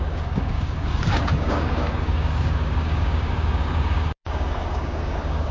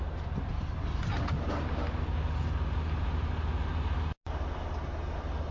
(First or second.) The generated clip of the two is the first